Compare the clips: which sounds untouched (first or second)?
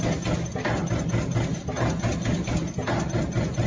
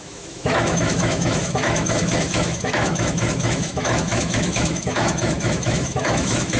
first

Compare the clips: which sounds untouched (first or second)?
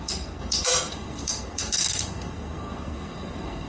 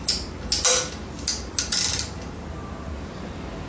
second